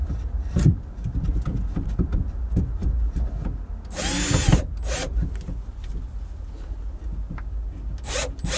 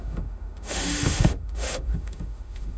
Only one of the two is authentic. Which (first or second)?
first